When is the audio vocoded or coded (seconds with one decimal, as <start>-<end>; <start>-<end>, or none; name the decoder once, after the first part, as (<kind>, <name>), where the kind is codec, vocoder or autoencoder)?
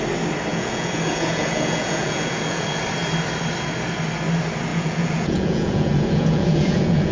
0.5-2.8 (vocoder, Vocos); 4.7-7.1